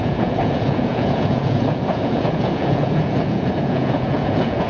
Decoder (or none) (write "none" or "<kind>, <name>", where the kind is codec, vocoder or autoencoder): vocoder, Vocos